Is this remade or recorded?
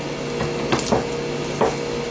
recorded